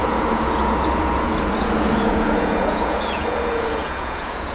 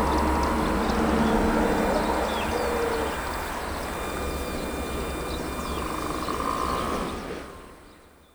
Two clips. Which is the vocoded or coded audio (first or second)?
first